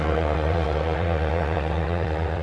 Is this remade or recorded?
remade